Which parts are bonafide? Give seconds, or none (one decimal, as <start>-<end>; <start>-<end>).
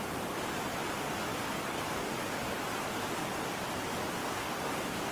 0.0-1.3; 2.6-4.2